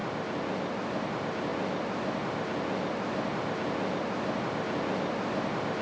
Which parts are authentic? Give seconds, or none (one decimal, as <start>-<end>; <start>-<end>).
0.0-5.8